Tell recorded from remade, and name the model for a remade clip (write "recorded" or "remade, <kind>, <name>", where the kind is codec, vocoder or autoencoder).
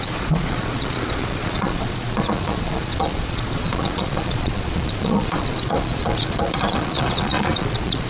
remade, vocoder, Vocos